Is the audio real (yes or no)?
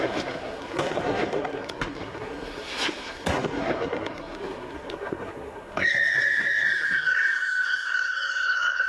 no